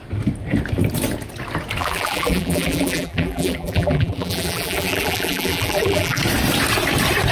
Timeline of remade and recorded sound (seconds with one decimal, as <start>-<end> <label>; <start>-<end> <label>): 0.0-1.8 recorded; 1.8-6.2 remade; 6.2-7.3 recorded